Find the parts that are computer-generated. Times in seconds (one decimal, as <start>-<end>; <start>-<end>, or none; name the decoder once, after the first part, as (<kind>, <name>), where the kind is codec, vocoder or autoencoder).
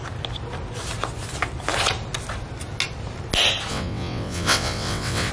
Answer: 3.7-5.3 (vocoder, WaveNeXt)